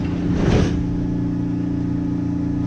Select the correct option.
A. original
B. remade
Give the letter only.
A